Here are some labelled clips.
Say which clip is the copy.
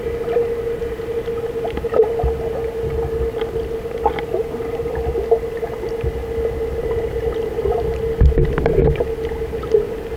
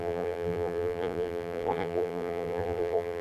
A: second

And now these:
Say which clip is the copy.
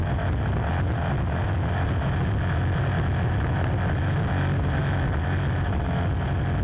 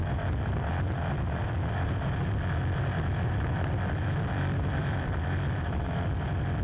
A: second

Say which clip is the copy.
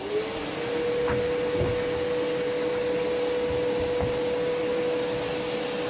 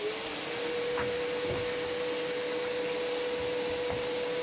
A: second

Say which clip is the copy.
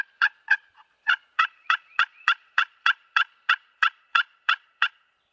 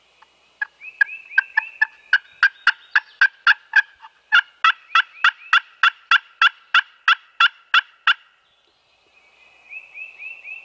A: first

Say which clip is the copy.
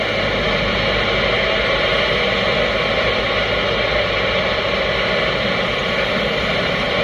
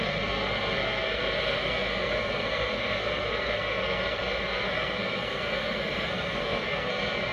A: second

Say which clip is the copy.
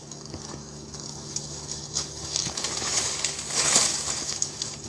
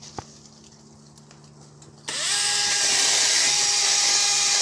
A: first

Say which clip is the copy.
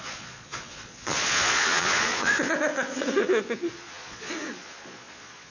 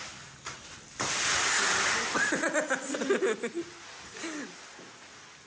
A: first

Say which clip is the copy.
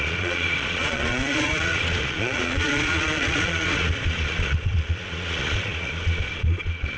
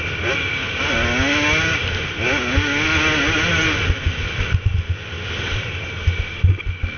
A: first